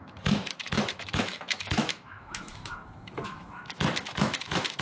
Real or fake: fake